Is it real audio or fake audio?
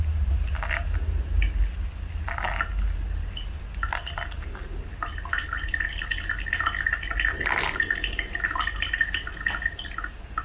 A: real